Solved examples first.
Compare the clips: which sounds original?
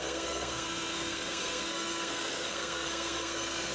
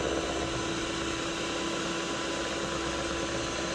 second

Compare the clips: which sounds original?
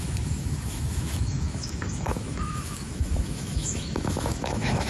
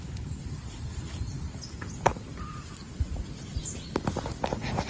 second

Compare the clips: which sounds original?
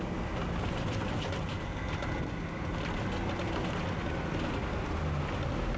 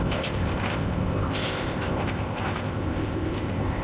first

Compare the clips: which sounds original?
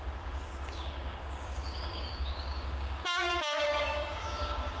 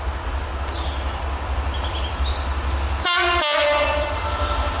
second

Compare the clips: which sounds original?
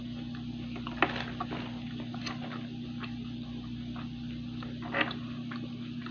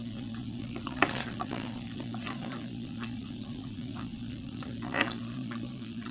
first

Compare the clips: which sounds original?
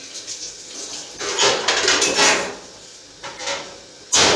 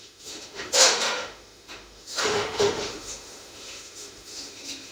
first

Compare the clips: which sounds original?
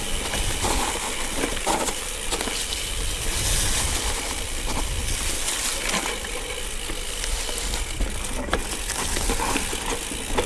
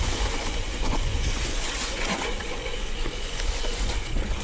first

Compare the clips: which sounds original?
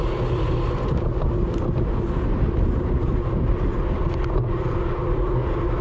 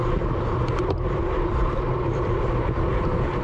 first